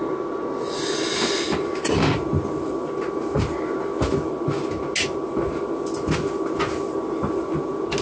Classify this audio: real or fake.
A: real